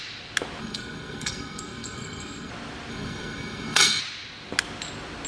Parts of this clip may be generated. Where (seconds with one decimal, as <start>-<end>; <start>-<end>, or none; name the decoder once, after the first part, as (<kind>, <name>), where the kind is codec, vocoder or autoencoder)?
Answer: 0.6-2.5 (codec, SNAC); 2.9-4.0